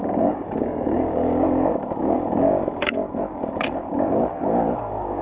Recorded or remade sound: remade